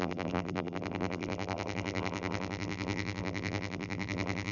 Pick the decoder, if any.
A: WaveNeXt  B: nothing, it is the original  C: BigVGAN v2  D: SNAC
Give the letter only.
C